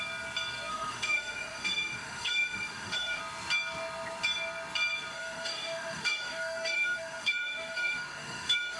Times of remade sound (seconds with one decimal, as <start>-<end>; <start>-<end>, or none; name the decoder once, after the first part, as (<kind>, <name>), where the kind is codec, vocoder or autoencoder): 0.7-3.2 (autoencoder, DAC-VAE); 5.1-8.8